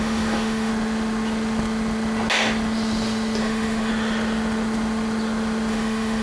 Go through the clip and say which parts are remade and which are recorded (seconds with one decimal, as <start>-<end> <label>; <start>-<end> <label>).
0.0-0.7 remade; 0.7-3.4 recorded; 3.4-3.9 remade; 3.9-5.7 recorded; 5.7-6.2 remade